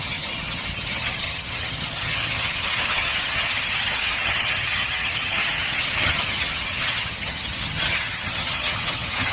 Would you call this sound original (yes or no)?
no